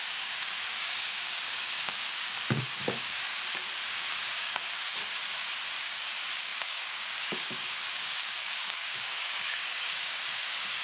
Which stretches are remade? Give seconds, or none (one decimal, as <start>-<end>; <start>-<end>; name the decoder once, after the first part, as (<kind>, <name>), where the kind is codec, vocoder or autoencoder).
0.0-3.3 (codec, DAC); 3.9-5.0; 5.8-10.8